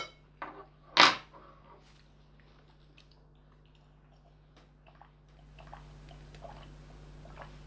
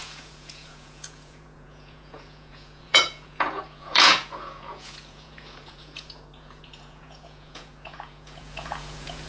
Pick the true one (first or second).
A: first